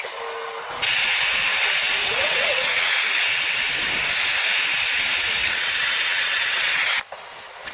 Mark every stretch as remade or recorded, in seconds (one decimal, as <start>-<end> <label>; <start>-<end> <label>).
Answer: 0.0-2.0 recorded; 2.0-2.9 remade; 2.9-5.4 recorded; 5.4-6.7 remade; 6.7-7.7 recorded